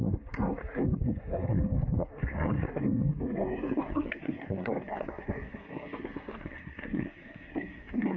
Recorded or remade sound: remade